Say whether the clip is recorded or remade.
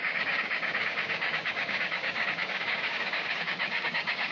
remade